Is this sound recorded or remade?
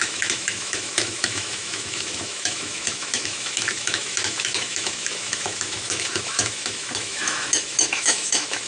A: remade